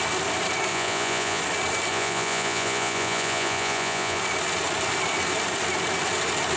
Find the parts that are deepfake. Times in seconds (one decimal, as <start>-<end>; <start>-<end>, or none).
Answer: 0.7-1.4; 1.9-4.2